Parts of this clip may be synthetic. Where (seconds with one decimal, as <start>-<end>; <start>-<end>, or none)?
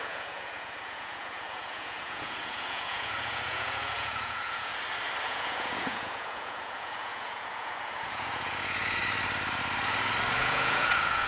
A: 0.0-4.7; 5.2-9.0; 10.4-11.3